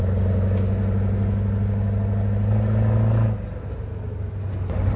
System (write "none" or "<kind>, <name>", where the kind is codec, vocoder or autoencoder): none